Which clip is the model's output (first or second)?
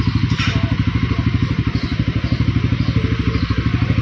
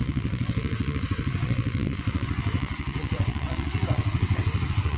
second